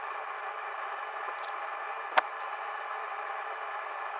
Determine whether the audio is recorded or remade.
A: recorded